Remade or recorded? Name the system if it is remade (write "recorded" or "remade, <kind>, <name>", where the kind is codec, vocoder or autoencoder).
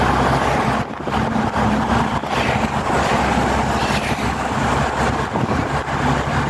recorded